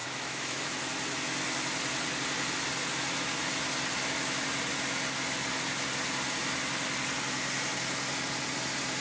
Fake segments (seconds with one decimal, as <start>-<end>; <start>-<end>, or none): 0.0-0.7